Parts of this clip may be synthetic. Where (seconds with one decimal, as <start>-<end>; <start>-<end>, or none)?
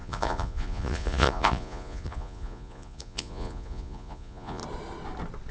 0.0-4.6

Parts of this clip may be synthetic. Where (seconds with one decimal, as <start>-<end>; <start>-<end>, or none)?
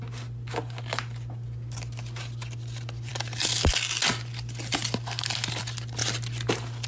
none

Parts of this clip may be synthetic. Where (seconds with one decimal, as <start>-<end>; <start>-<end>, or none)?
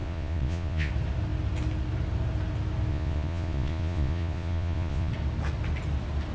0.0-0.9; 2.9-5.1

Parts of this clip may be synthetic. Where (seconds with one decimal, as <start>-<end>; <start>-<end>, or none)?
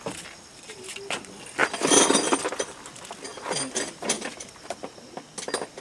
1.6-2.8; 3.3-4.9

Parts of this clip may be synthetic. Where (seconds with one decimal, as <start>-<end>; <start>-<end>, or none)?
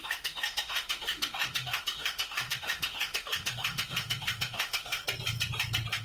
0.0-5.0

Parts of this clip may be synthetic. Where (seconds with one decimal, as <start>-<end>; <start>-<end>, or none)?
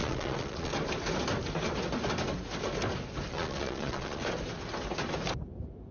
0.0-0.7; 3.3-4.2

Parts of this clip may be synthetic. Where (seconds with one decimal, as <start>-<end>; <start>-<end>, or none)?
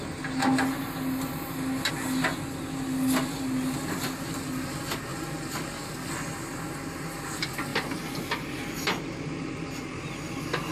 none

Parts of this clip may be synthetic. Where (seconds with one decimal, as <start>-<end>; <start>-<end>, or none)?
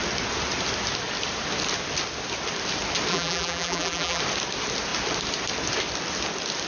3.1-4.2